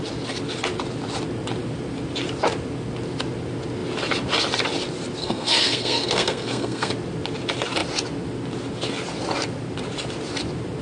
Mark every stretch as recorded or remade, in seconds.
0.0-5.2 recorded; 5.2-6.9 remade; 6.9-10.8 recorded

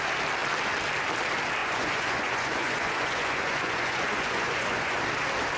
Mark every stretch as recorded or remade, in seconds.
0.0-1.6 recorded; 1.6-5.0 remade; 5.0-5.6 recorded

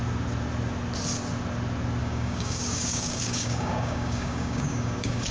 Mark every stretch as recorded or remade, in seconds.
0.0-2.0 recorded; 2.0-5.3 remade